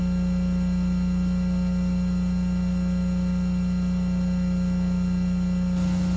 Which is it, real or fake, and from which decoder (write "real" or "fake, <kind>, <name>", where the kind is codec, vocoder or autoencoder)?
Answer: real